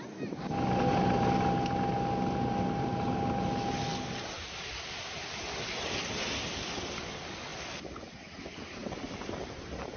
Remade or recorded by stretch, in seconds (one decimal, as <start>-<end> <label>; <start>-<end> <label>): 0.0-10.0 recorded